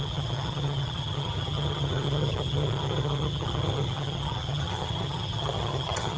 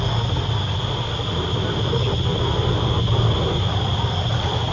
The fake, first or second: first